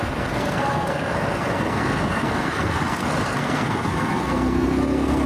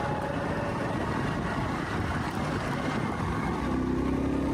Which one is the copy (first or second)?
first